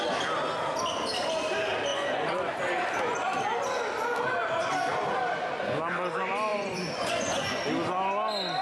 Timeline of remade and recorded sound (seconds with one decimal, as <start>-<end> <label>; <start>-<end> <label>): 0.0-1.9 recorded; 1.9-2.6 remade; 2.6-6.5 recorded; 6.5-7.6 remade; 7.6-8.6 recorded